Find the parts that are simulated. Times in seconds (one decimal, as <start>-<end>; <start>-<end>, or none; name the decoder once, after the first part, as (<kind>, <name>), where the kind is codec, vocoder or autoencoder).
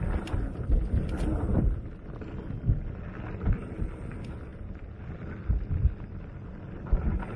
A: none